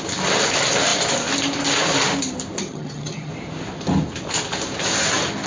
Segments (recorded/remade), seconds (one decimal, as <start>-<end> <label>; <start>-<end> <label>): 0.0-2.6 recorded; 2.6-3.3 remade; 3.3-5.5 recorded